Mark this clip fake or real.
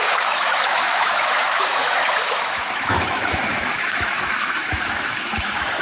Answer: fake